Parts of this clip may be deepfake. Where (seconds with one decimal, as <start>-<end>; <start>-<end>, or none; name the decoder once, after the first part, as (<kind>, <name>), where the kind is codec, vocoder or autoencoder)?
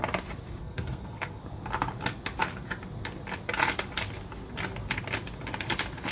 0.6-1.4 (codec, SNAC)